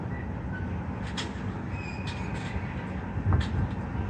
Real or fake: real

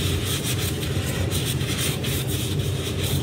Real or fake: fake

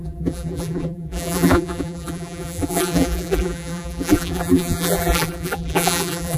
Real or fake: fake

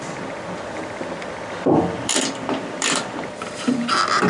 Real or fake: fake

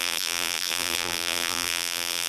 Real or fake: fake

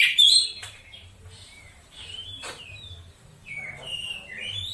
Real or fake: fake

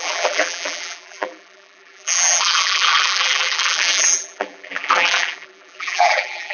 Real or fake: fake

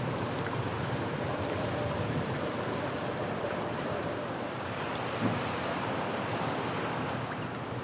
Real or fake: fake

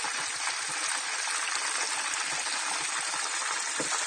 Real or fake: real